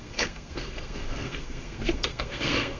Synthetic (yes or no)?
yes